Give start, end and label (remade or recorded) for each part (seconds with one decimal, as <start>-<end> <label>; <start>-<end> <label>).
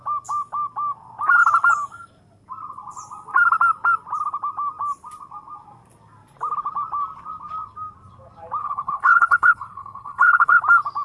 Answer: 0.0-8.6 recorded; 8.6-10.6 remade; 10.6-11.0 recorded